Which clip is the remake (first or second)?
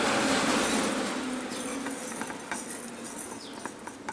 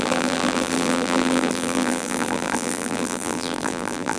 second